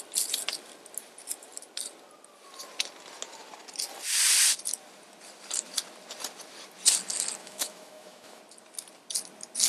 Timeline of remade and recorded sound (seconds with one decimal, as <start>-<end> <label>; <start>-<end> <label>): 0.0-7.4 recorded; 7.4-8.4 remade; 8.4-9.7 recorded